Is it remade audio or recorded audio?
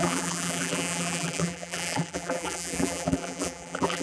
remade